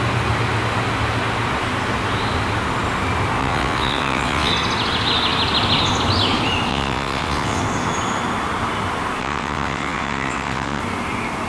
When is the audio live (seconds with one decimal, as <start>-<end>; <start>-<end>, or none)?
0.0-3.4; 4.5-6.7; 7.6-9.2; 10.8-11.5